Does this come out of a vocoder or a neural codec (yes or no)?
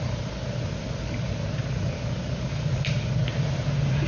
no